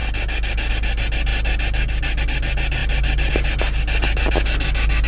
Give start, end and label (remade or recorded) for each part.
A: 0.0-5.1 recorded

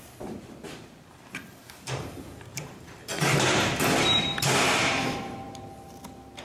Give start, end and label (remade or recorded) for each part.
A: 0.0-2.5 recorded; 2.5-5.5 remade; 5.5-6.4 recorded

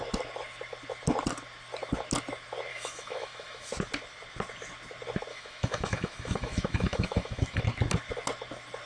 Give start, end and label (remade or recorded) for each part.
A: 0.0-2.7 recorded; 2.7-3.7 remade; 3.7-5.3 recorded; 5.3-7.6 remade; 7.6-8.9 recorded

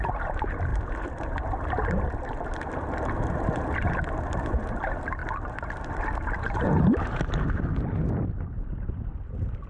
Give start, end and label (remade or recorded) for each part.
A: 0.0-9.7 recorded

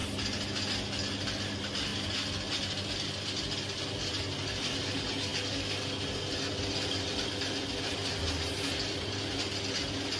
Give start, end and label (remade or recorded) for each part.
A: 0.0-10.2 recorded

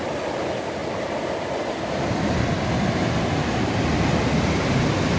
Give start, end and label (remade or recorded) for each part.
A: 0.0-5.2 recorded

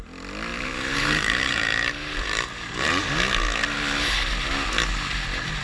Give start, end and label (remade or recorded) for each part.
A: 0.0-0.5 recorded; 0.5-3.0 remade; 3.0-5.6 recorded